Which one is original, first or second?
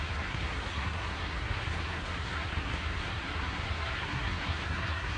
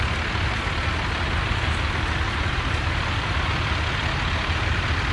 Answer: second